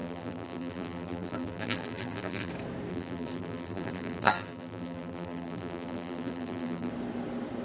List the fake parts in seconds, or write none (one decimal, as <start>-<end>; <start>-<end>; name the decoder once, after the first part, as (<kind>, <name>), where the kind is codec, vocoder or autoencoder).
0.0-2.5 (vocoder, BigVGAN v2); 2.9-6.9

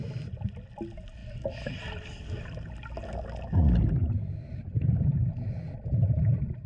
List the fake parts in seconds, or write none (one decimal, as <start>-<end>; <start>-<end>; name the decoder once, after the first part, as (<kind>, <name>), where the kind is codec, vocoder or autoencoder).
none

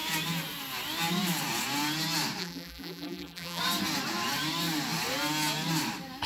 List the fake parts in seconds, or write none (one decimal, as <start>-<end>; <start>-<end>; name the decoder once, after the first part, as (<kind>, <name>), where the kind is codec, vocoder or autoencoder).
2.4-3.6 (vocoder, BigVGAN v2)

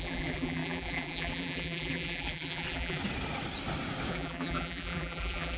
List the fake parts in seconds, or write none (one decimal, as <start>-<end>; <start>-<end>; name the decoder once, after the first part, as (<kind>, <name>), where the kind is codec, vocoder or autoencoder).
0.0-3.0 (vocoder, BigVGAN v2); 4.1-5.6

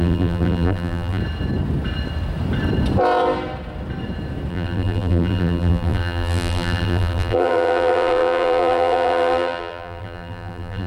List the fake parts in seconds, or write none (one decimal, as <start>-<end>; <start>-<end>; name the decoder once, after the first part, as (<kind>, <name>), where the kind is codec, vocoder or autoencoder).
0.0-1.2 (vocoder, BigVGAN v2); 4.5-10.9

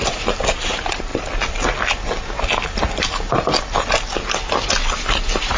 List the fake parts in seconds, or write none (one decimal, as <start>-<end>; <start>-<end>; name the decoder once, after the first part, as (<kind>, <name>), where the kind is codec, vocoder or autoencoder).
none

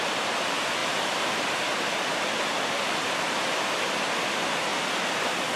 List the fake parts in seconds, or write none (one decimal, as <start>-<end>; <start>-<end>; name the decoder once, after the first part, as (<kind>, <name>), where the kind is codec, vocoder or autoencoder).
0.0-0.8 (vocoder, BigVGAN v2); 2.1-5.6